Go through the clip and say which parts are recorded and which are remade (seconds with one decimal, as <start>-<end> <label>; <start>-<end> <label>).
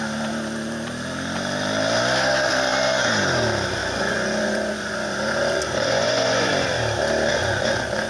0.0-3.8 recorded; 3.8-6.5 remade; 6.5-7.3 recorded; 7.3-8.1 remade